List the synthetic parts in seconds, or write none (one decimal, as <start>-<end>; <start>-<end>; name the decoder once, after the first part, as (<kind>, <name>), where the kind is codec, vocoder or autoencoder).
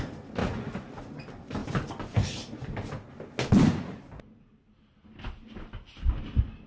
0.4-1.0 (vocoder, Vocos)